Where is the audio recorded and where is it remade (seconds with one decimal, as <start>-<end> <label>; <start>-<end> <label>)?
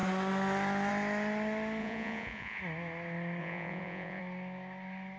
0.0-1.8 recorded; 1.8-2.6 remade; 2.6-3.4 recorded; 3.4-4.2 remade; 4.2-5.2 recorded